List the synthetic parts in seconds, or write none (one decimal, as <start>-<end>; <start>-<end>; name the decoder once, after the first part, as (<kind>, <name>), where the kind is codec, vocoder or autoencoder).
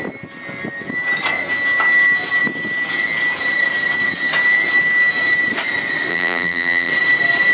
6.1-6.9 (vocoder, BigVGAN v2)